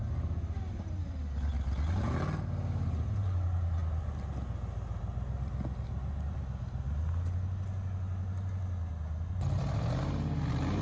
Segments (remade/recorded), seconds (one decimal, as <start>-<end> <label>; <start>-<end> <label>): 0.0-10.8 recorded